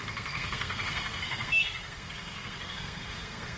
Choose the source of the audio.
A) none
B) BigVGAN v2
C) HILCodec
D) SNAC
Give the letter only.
D